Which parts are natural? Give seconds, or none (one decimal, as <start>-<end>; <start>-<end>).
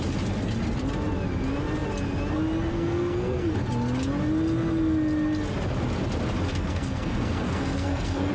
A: 0.0-2.7; 3.5-6.5